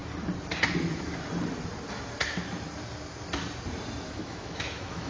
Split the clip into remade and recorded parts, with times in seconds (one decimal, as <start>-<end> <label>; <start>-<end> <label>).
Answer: 0.0-0.7 recorded; 0.7-1.1 remade; 1.1-4.0 recorded; 4.0-5.1 remade